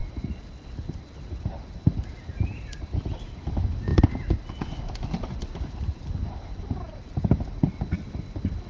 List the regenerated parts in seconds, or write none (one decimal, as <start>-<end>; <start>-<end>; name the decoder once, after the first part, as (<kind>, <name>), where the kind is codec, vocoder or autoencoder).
none